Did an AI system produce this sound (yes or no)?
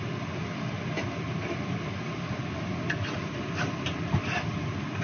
yes